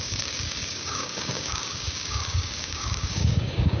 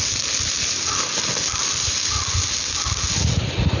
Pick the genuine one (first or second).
second